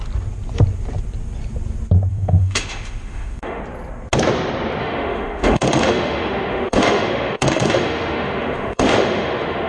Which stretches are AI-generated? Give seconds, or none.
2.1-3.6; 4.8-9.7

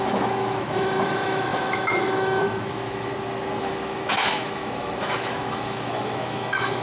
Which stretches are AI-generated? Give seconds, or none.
0.0-3.1; 3.6-6.8

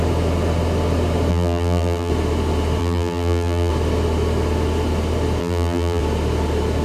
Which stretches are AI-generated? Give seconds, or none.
1.3-2.1; 2.8-3.7; 5.4-6.0